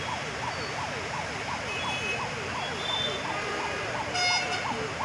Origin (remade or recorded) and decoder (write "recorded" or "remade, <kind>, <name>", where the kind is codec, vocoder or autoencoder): recorded